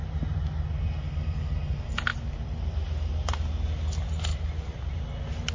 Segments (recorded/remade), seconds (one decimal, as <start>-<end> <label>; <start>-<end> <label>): 0.0-2.1 recorded; 2.1-2.6 remade; 2.6-4.3 recorded; 4.3-4.9 remade; 4.9-5.5 recorded

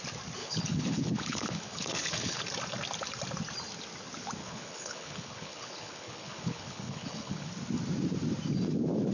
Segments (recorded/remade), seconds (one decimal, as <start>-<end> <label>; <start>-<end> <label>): 0.0-0.4 recorded; 0.4-2.4 remade; 2.4-4.4 recorded; 4.4-7.5 remade; 7.5-9.1 recorded

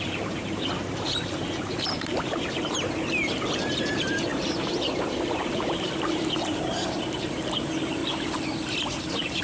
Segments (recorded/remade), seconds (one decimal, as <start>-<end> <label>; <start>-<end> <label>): 0.0-8.0 remade; 8.0-9.0 recorded; 9.0-9.4 remade

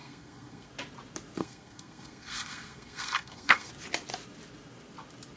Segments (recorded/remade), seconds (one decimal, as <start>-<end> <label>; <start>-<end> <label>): 0.0-0.7 remade; 0.7-1.4 recorded; 1.4-3.7 remade; 3.7-5.4 recorded

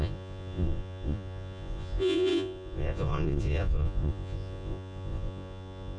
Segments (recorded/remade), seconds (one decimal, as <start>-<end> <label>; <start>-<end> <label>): 0.0-6.0 remade

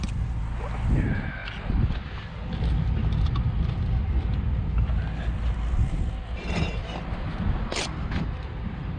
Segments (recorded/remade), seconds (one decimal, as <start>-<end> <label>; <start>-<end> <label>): 0.0-9.0 recorded

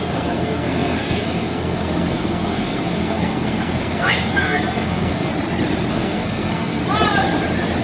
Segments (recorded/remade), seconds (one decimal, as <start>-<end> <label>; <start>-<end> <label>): 0.0-5.3 remade; 5.3-5.9 recorded; 5.9-6.8 remade; 6.8-7.8 recorded

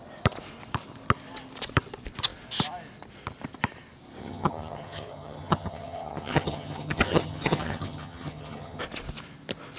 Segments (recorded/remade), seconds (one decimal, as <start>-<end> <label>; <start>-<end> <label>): 0.0-4.2 recorded; 4.2-8.8 remade; 8.8-9.8 recorded